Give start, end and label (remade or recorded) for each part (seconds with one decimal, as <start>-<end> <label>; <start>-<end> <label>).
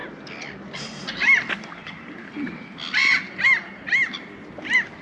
0.0-5.0 recorded